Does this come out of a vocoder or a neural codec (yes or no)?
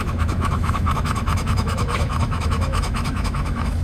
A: yes